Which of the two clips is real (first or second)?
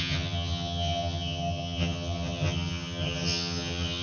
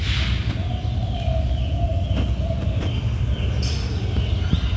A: second